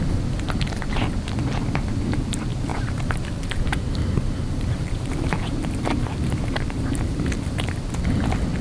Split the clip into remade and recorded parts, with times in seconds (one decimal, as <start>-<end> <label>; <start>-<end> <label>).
0.0-2.7 recorded; 2.7-7.7 remade; 7.7-8.6 recorded